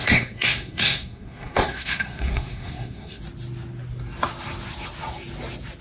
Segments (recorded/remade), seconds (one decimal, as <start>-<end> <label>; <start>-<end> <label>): 0.0-3.2 remade; 3.2-5.8 recorded